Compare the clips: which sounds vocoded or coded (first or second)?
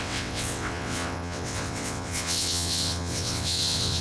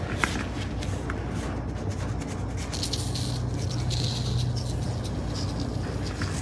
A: first